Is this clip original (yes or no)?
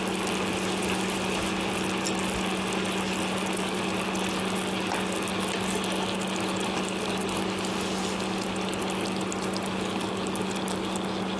yes